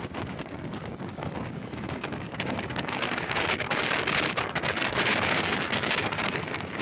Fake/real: fake